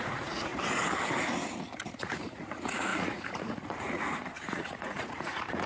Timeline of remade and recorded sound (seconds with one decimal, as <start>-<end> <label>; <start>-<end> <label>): 0.0-0.5 remade; 0.5-2.0 recorded; 2.0-5.7 remade